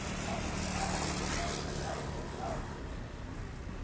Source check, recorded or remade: recorded